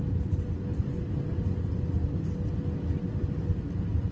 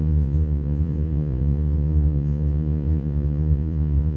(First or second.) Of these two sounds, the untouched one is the first